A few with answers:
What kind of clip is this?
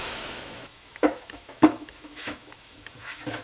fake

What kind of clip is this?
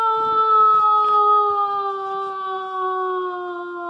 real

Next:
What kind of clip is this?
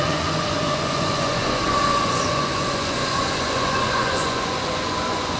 fake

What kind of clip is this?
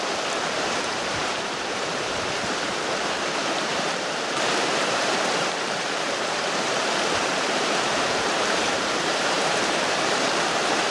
fake